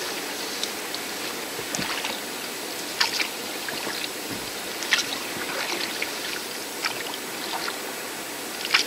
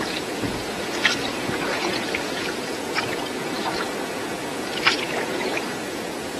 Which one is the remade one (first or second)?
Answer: second